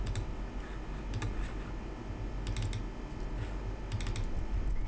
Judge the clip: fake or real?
real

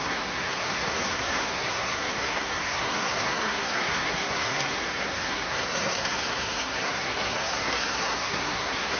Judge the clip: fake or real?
fake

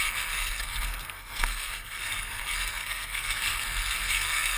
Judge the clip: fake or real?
fake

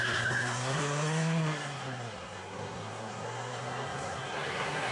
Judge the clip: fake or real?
fake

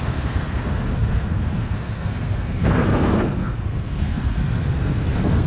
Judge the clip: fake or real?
fake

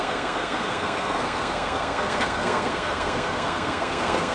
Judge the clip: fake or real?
fake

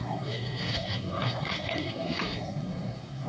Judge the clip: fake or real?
fake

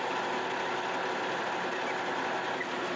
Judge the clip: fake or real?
real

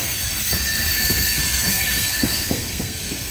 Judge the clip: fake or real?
fake